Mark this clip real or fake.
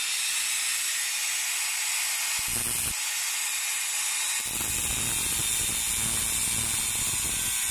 real